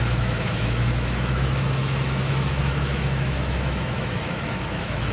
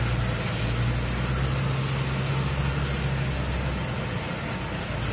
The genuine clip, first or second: second